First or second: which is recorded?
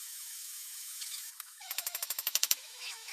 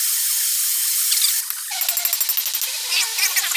second